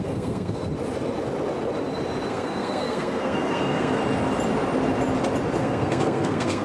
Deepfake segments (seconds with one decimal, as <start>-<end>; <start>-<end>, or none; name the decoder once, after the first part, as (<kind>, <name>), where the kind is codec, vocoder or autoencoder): 0.0-0.7 (codec, SNAC); 2.3-4.0; 5.6-6.6